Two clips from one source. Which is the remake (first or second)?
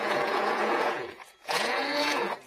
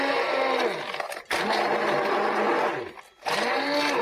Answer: first